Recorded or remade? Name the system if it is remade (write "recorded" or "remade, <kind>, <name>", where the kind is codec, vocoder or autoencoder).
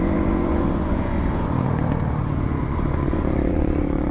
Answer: remade, vocoder, Vocos